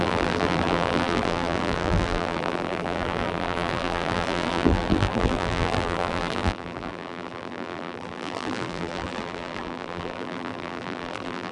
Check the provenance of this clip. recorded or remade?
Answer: remade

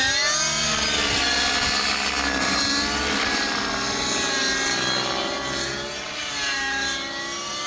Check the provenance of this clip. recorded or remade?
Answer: recorded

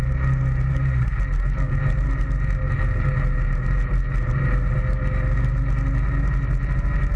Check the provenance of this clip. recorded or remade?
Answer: recorded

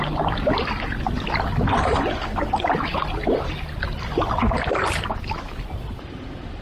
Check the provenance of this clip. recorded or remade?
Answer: recorded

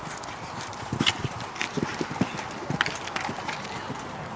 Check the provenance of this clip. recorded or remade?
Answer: recorded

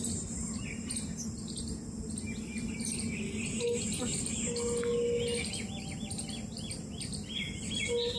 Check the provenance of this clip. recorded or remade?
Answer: recorded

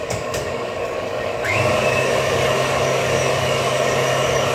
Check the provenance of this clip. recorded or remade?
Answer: remade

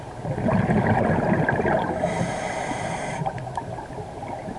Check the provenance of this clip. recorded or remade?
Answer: recorded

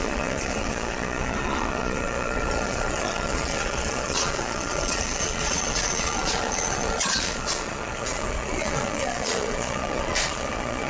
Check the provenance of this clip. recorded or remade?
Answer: remade